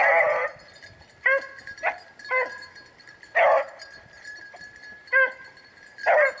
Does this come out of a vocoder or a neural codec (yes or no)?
no